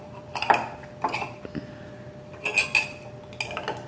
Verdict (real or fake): real